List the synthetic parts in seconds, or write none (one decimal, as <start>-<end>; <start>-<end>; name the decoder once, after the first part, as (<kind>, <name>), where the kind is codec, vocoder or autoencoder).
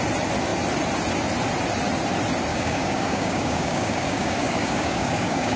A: 2.5-5.6 (codec, DAC)